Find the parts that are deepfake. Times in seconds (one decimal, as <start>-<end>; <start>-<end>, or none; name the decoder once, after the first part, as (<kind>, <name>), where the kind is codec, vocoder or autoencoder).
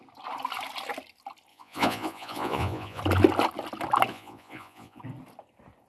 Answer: 1.5-3.0 (vocoder, Vocos); 4.1-5.0